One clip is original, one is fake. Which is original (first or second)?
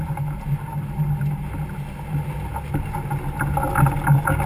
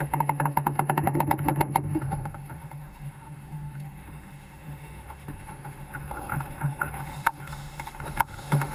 first